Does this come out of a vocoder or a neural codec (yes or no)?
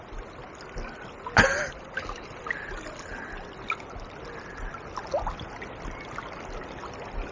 no